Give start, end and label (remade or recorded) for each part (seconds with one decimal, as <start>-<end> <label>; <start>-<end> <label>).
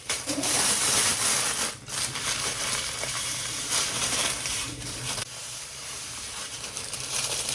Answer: 0.0-1.1 remade; 1.1-2.2 recorded; 2.2-7.5 remade